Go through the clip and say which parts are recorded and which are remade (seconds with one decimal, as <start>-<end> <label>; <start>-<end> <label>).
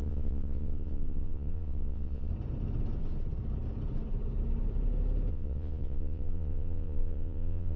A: 0.0-2.3 remade; 2.3-5.3 recorded; 5.3-7.8 remade